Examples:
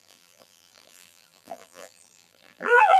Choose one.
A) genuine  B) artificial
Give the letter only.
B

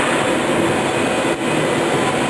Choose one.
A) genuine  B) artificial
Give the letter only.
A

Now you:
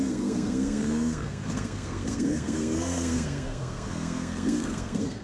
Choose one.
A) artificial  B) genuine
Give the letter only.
A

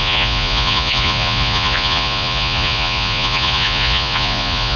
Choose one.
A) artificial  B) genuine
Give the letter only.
A